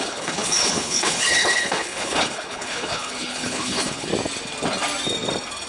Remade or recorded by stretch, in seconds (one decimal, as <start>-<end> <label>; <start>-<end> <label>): 0.0-4.1 remade; 4.1-5.7 recorded